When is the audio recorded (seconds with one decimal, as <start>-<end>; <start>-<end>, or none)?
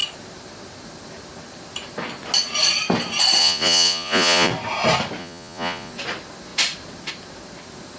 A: 0.0-3.4; 4.5-5.2; 5.9-8.0